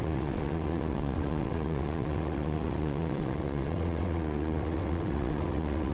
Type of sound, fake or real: fake